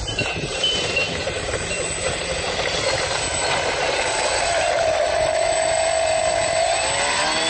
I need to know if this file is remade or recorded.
remade